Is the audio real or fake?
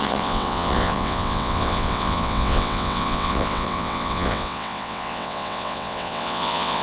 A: fake